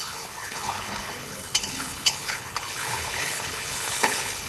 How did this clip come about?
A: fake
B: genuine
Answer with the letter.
A